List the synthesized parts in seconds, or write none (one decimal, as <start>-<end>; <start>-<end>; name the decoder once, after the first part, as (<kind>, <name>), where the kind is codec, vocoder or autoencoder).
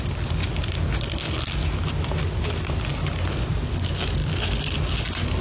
none